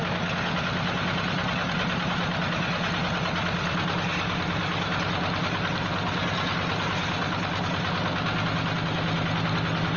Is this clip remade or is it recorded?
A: recorded